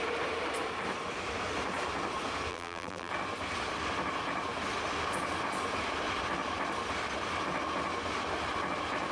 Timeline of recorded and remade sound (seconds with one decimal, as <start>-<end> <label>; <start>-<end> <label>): 0.0-2.5 recorded; 2.5-3.1 remade; 3.1-9.1 recorded